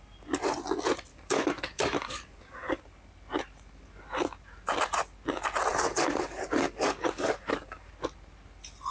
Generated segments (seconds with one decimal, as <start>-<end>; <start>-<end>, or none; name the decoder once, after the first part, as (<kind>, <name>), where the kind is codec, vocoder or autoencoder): 1.1-2.8 (codec, DAC); 5.7-7.9